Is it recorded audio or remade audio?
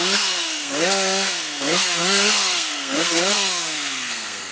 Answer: remade